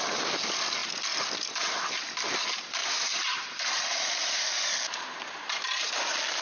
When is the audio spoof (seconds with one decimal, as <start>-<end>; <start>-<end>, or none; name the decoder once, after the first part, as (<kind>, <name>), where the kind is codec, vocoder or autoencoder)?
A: 2.8-6.0 (vocoder, BigVGAN v2)

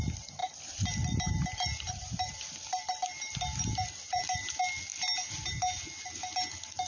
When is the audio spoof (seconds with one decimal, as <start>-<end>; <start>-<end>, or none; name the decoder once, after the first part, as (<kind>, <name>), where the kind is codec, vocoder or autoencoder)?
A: 0.4-4.5 (vocoder, BigVGAN v2)

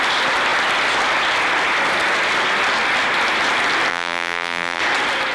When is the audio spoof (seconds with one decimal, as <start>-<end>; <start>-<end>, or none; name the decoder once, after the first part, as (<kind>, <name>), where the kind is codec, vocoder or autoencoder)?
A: 3.9-4.8 (vocoder, BigVGAN v2)

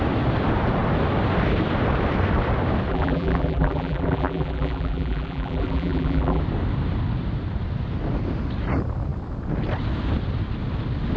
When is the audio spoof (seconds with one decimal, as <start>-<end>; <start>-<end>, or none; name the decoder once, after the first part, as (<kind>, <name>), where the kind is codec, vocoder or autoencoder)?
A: 2.9-6.4 (vocoder, BigVGAN v2)

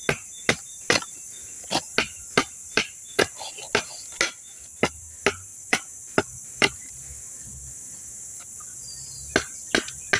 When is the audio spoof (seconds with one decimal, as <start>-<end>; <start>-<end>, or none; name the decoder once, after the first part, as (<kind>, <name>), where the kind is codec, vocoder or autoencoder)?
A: 2.4-3.2 (vocoder, BigVGAN v2); 5.5-6.9

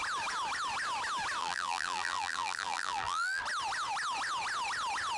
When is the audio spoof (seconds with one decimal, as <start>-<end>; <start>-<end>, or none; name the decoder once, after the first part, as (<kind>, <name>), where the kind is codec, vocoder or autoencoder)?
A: 1.4-3.4 (vocoder, BigVGAN v2)

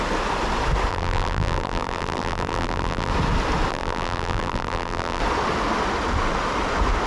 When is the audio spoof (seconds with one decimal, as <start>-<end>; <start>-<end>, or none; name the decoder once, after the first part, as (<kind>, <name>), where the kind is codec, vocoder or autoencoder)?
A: 0.9-3.1 (vocoder, BigVGAN v2); 3.7-5.2

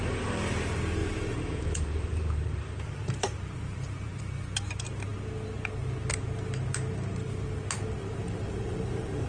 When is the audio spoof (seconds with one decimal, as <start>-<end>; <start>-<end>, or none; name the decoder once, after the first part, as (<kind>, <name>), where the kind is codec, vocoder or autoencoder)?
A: 1.0-4.4 (vocoder, BigVGAN v2); 8.0-9.3